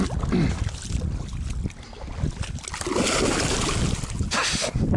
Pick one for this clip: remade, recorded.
recorded